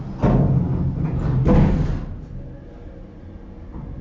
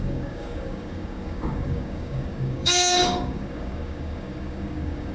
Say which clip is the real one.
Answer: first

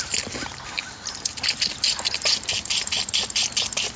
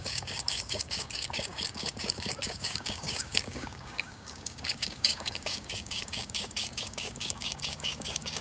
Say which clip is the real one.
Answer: first